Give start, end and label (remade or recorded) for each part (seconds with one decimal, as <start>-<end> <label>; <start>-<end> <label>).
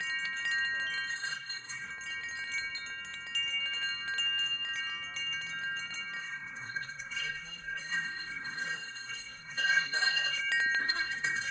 0.0-1.1 recorded; 1.1-1.9 remade; 1.9-6.2 recorded; 6.2-10.4 remade; 10.4-10.8 recorded; 10.8-11.5 remade